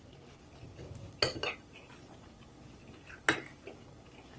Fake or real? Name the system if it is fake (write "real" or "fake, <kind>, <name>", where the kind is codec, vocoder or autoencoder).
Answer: real